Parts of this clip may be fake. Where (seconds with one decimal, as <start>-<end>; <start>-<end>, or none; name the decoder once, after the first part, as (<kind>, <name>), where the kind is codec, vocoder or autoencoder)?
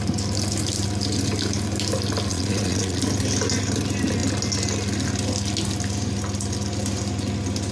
2.3-3.0 (vocoder, Vocos)